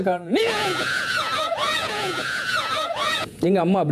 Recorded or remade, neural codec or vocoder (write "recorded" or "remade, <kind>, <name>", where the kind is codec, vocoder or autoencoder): remade, vocoder, Vocos